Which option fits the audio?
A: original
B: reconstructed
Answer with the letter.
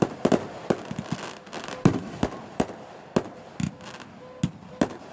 A